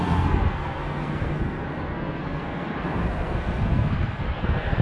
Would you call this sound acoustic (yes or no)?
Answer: no